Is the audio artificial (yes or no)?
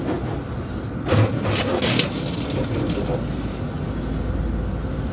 no